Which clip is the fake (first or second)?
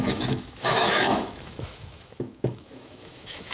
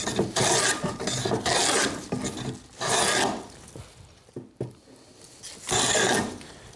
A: first